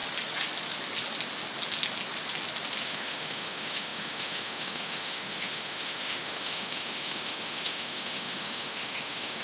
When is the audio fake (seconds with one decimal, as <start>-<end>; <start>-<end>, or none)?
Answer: 2.8-9.4